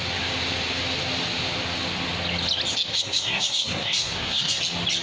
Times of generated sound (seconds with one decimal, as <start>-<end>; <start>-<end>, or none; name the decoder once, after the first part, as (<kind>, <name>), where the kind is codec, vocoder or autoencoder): 2.9-4.6 (codec, SNAC)